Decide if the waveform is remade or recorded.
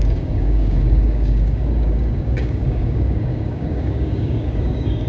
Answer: remade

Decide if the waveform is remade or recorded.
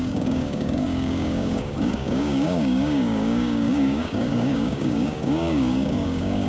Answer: remade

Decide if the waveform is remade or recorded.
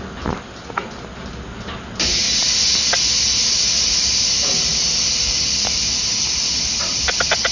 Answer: recorded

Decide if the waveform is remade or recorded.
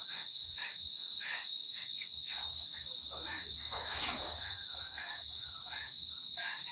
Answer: remade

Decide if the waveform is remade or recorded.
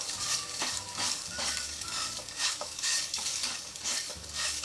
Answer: remade